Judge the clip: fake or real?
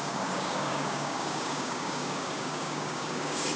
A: fake